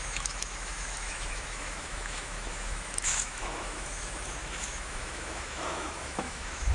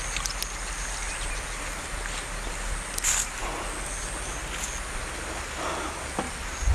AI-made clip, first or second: first